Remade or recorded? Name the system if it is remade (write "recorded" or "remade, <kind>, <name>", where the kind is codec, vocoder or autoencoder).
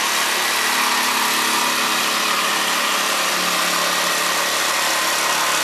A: recorded